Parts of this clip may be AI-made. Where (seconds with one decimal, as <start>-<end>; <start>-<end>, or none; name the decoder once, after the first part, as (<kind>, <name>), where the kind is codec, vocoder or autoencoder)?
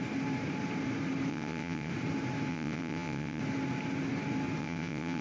1.3-1.9 (vocoder, WaveNeXt); 2.5-3.4; 4.6-5.2